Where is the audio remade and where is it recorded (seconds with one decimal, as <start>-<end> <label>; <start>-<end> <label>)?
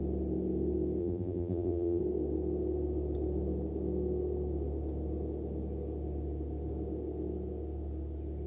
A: 0.0-1.0 recorded; 1.0-2.0 remade; 2.0-8.5 recorded